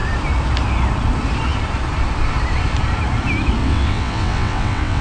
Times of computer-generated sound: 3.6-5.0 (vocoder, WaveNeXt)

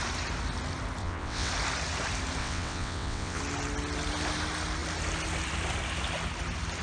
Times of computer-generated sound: 1.0-1.5 (vocoder, WaveNeXt); 2.4-3.4

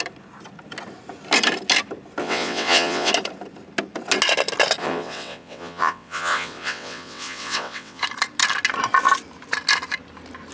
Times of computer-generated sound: 2.2-3.1 (vocoder, WaveNeXt); 4.8-8.0

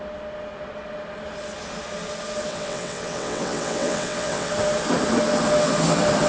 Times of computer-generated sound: 2.5-4.5 (vocoder, WaveNeXt)